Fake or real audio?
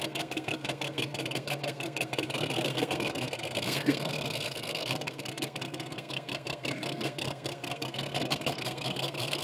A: fake